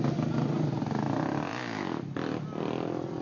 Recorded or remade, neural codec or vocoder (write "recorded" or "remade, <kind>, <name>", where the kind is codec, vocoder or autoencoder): recorded